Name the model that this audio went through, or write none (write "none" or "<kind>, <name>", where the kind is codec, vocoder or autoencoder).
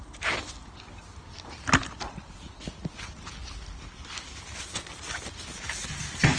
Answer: none